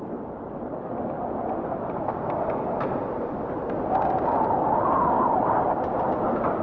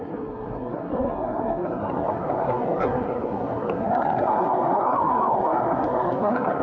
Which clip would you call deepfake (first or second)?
second